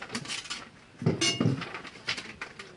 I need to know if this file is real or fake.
real